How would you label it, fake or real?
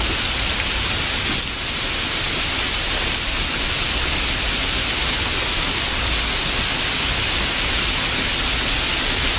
real